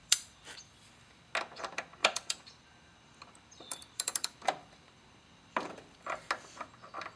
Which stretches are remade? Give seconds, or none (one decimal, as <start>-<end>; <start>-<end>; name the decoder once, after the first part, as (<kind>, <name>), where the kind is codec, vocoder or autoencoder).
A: 0.0-0.6 (vocoder, BigVGAN v2); 2.0-6.3